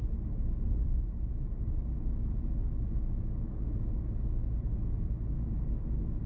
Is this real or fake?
real